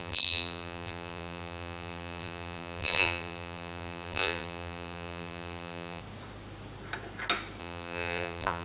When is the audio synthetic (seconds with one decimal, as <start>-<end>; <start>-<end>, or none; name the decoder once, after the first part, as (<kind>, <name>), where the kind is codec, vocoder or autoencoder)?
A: 0.0-6.0 (vocoder, BigVGAN v2); 7.6-8.6